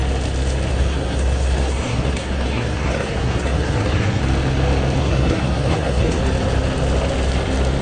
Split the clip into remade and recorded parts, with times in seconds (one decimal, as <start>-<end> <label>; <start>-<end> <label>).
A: 0.0-0.7 recorded; 0.7-4.2 remade; 4.2-5.0 recorded; 5.0-6.2 remade; 6.2-7.8 recorded